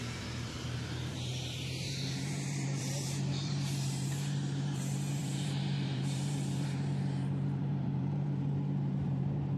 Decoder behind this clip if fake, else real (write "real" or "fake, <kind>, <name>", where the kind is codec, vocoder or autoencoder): fake, vocoder, BigVGAN v2